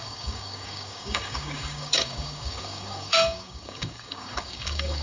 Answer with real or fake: fake